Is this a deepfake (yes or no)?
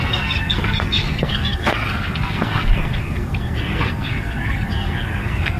yes